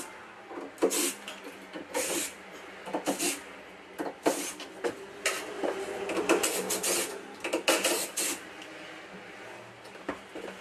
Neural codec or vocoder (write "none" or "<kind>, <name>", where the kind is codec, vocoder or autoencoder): none